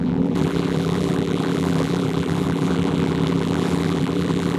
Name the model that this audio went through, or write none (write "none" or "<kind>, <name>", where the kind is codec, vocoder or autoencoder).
vocoder, BigVGAN v2